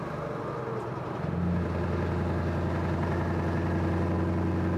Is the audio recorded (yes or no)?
yes